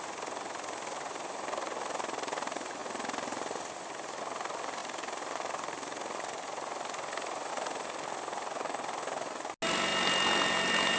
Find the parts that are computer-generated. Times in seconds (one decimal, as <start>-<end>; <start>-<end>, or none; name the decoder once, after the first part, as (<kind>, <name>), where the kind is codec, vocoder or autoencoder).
none